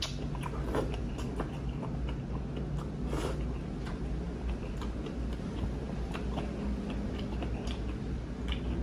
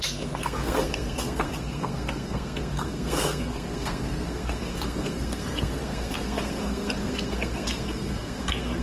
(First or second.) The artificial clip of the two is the second